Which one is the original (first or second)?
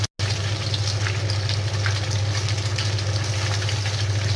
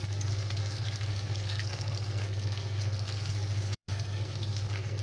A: first